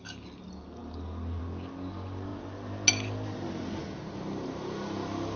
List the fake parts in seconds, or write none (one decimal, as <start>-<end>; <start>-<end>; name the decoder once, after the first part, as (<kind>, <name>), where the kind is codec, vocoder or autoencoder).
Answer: none